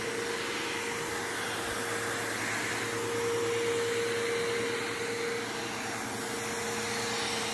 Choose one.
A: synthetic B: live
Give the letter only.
B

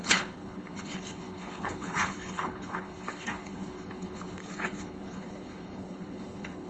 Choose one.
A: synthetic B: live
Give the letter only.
A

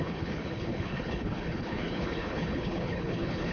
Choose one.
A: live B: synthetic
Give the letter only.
B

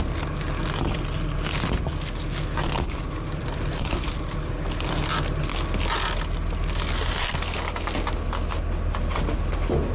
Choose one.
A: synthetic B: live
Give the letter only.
B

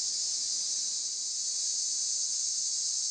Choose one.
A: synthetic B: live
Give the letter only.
B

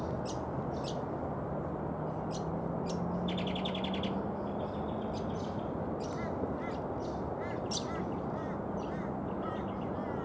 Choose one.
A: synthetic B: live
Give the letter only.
B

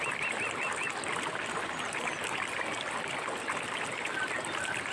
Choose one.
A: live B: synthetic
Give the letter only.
A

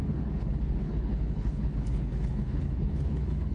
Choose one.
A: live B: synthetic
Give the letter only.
B